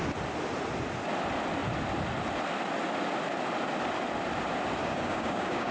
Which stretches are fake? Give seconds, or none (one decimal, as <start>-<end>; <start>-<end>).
4.8-5.7